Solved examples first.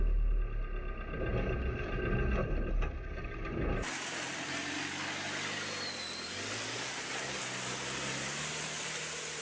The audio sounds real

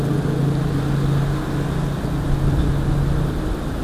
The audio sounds real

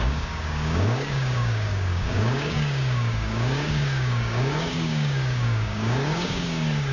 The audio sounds fake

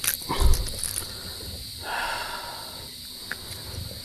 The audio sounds real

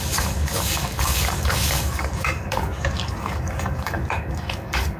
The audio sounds fake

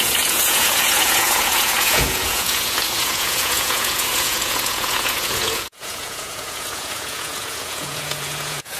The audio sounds fake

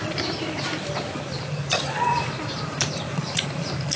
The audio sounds fake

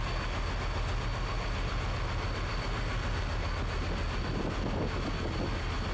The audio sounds real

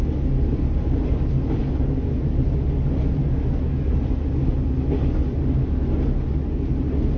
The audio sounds real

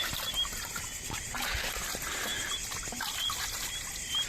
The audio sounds real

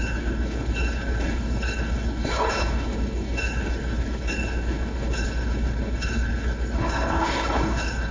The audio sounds fake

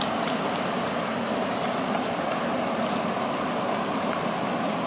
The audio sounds real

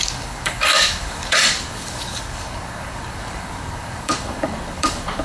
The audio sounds fake